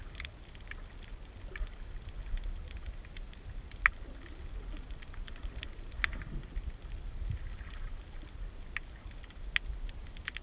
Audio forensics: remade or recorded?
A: recorded